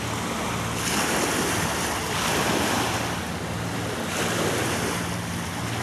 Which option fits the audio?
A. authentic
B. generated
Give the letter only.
A